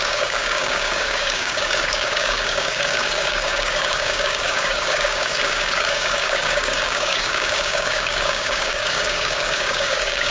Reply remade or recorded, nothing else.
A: remade